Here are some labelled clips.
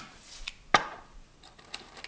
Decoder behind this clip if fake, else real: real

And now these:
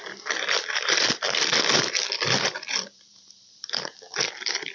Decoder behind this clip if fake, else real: fake, vocoder, BigVGAN v2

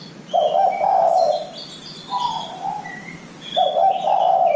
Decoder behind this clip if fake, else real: real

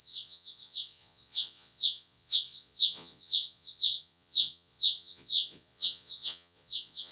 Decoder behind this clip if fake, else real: fake, vocoder, Vocos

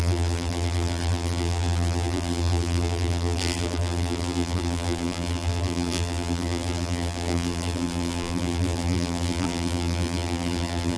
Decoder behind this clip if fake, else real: fake, vocoder, BigVGAN v2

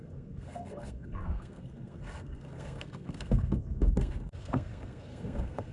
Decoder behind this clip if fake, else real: fake, codec, SNAC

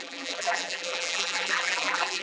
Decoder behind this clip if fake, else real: fake, vocoder, BigVGAN v2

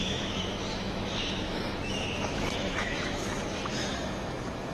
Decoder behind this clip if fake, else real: fake, autoencoder, DAC-VAE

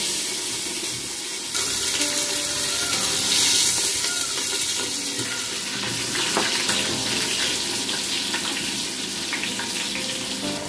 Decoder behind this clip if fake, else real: real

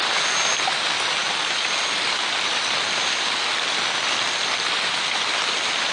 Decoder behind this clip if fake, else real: real